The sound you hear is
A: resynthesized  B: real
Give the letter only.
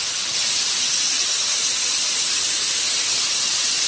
A